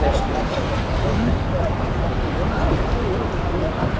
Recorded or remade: recorded